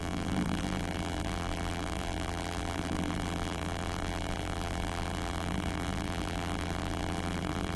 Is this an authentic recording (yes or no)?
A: no